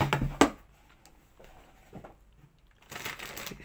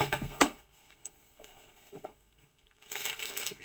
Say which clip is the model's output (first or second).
second